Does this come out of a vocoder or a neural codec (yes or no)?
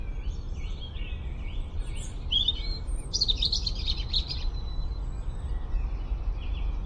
yes